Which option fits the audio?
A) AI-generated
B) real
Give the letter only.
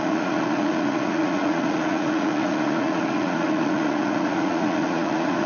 A